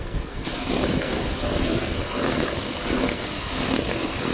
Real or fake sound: fake